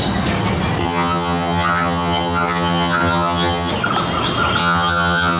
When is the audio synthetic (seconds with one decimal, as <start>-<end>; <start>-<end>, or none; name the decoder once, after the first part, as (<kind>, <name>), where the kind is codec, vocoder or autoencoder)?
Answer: 0.8-3.7 (vocoder, HiFi-GAN); 4.6-5.4